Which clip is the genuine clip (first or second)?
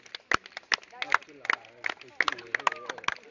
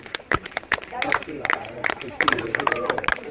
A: first